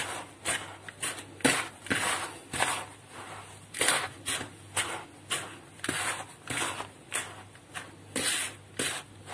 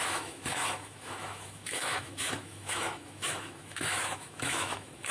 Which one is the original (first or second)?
first